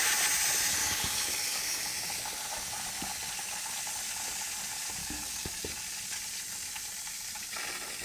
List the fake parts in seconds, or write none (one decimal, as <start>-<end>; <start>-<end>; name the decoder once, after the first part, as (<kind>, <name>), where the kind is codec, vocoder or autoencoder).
0.8-1.8 (codec, DAC); 5.0-5.6